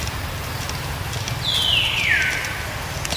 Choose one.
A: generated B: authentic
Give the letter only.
B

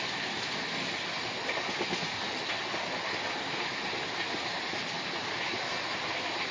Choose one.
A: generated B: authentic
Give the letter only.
B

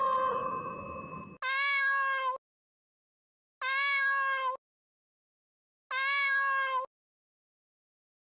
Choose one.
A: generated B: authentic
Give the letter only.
B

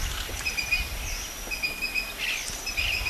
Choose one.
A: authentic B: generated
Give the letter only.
A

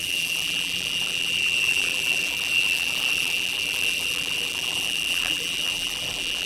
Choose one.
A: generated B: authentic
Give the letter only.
A